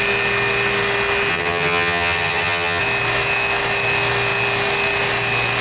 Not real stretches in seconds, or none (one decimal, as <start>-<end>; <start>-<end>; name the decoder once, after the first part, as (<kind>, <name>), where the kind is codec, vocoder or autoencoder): 1.3-2.8 (vocoder, HiFi-GAN)